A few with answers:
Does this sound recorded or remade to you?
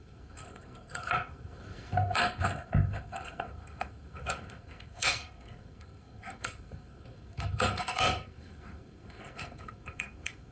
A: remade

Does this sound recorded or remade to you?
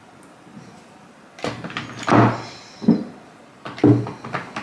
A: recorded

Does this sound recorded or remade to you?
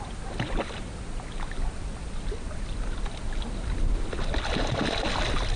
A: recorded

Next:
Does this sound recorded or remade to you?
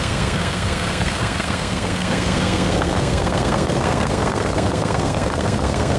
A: remade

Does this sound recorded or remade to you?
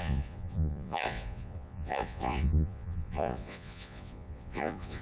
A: remade